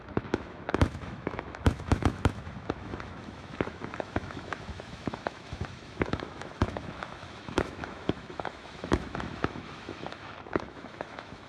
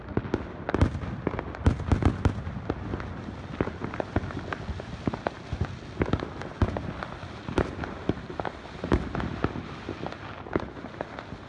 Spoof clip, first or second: first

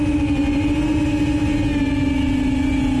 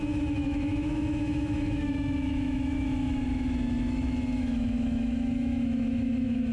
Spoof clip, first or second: second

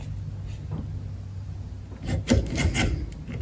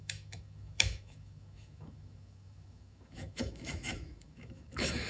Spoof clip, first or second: second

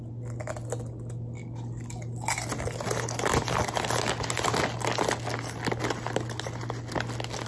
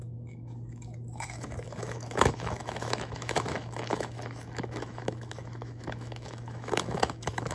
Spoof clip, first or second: second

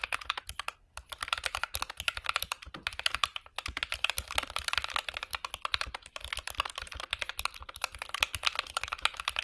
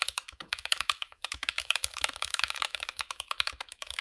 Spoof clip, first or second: second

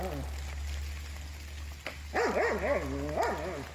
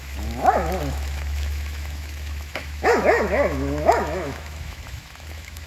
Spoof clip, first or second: second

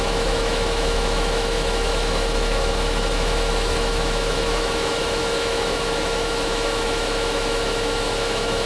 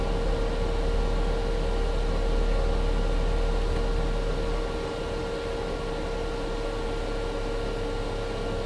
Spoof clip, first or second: first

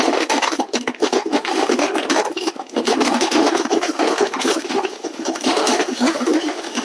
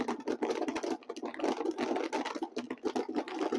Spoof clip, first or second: first